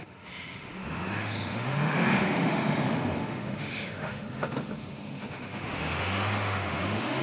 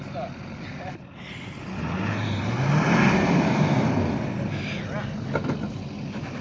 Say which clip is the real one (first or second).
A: second